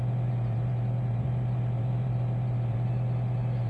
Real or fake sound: fake